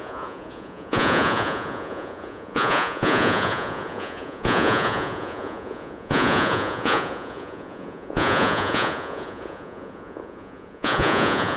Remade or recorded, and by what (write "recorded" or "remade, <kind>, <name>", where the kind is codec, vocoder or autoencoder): remade, vocoder, Vocos